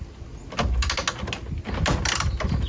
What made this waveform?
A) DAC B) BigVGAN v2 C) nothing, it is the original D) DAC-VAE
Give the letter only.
C